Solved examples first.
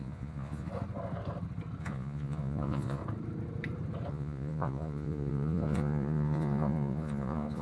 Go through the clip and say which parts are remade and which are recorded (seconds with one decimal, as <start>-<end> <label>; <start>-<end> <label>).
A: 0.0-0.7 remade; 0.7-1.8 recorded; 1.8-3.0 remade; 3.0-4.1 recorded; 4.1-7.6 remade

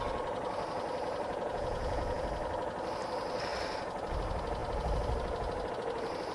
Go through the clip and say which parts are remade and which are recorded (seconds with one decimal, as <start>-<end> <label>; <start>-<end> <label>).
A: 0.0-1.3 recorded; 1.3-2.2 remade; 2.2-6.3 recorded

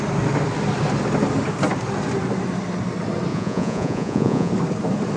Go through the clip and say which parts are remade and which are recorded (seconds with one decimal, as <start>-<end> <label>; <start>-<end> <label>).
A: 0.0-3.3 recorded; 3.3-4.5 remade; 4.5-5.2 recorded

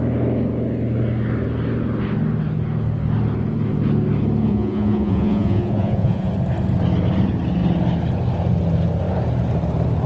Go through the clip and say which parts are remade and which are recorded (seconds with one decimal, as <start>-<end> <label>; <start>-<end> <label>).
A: 0.0-4.5 recorded; 4.5-6.3 remade; 6.3-10.1 recorded